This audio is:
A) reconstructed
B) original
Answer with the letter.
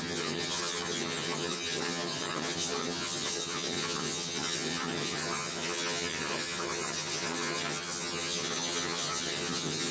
A